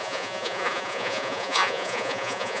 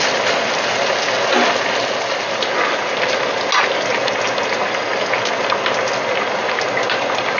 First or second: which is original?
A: second